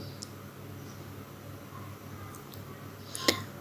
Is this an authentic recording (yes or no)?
yes